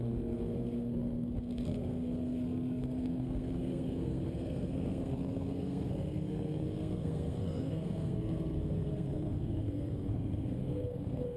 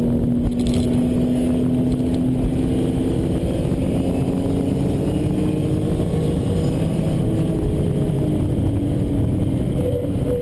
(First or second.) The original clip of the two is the second